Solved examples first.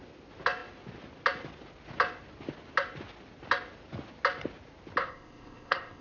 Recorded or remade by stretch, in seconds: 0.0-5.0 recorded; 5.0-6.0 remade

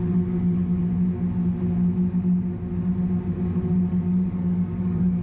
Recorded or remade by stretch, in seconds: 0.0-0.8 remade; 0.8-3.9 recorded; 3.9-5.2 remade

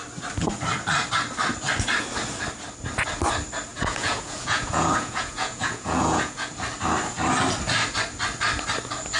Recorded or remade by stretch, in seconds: 0.0-3.7 recorded; 3.7-6.5 remade; 6.5-9.2 recorded

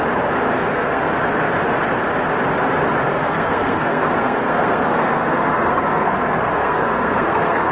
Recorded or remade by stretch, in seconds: 0.0-0.5 recorded; 0.5-1.1 remade; 1.1-3.1 recorded; 3.1-7.7 remade

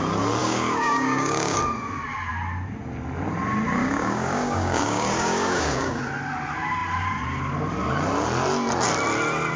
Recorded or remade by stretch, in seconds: 0.0-0.4 recorded; 0.4-1.6 remade; 1.6-3.8 recorded; 3.8-6.0 remade; 6.0-9.6 recorded

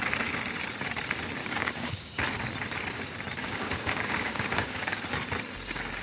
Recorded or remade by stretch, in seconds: 0.0-1.4 recorded; 1.4-2.2 remade; 2.2-3.4 recorded; 3.4-5.0 remade; 5.0-6.0 recorded